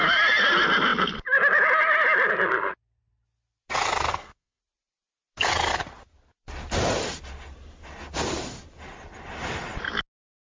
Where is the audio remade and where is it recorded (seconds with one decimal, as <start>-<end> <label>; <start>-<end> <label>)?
0.0-4.1 recorded; 4.1-4.6 remade; 4.6-10.5 recorded